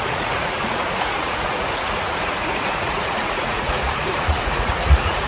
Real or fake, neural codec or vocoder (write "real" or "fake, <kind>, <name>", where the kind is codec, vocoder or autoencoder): fake, vocoder, Vocos